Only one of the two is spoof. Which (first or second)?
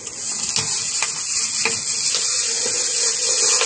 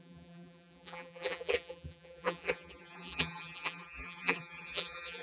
second